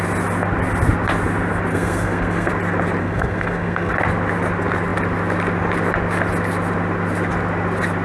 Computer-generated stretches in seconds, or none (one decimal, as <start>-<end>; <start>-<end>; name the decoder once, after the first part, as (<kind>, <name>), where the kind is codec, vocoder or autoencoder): 1.7-2.5 (codec, SNAC); 3.0-3.9